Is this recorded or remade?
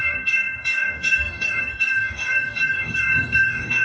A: remade